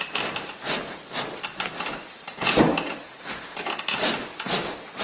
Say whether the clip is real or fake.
real